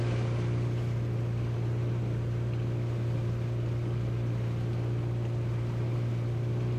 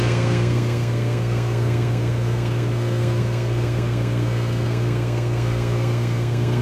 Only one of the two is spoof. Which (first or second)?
second